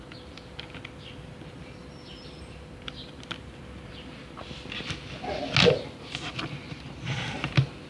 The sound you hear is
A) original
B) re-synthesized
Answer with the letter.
A